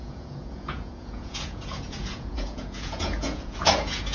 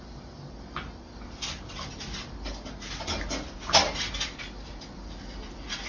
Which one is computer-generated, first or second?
first